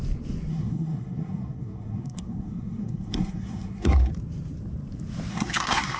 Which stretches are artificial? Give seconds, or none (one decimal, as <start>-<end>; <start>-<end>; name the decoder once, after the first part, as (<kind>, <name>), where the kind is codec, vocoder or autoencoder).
0.5-4.1 (codec, SNAC); 5.3-6.0